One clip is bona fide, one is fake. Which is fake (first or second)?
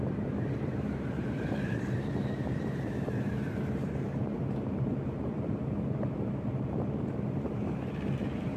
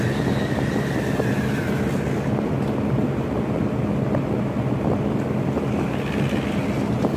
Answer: first